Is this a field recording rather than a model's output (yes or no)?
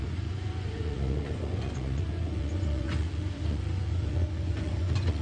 no